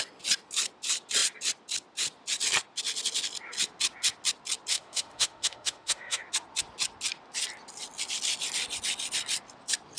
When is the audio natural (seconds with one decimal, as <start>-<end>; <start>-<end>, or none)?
0.0-4.7; 6.2-10.0